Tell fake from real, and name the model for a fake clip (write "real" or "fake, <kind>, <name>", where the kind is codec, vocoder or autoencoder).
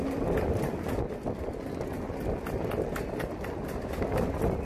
real